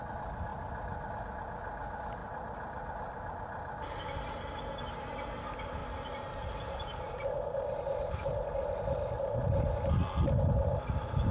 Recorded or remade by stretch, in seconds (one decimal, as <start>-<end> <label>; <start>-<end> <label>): 0.0-11.3 recorded